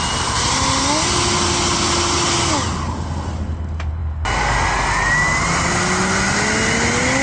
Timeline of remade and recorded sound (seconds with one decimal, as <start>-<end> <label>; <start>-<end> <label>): 0.0-7.2 recorded